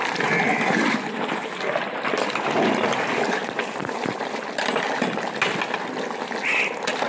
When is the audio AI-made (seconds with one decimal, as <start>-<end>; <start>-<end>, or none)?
none